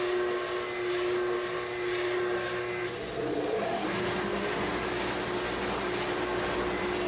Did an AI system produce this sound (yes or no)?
no